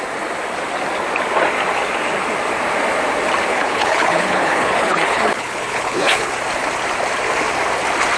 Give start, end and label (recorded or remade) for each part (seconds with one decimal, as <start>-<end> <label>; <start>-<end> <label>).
0.0-3.5 recorded; 3.5-6.3 remade; 6.3-8.2 recorded